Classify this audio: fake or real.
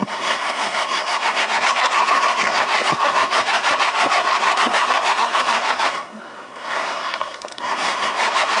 fake